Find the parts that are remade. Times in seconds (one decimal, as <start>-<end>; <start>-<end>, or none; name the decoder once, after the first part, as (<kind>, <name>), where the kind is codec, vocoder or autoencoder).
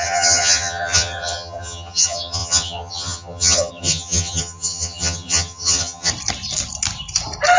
0.0-6.1 (vocoder, HiFi-GAN)